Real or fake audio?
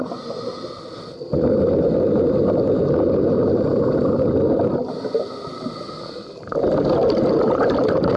real